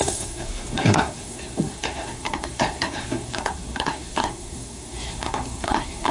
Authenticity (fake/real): fake